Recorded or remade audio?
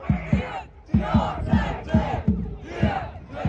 recorded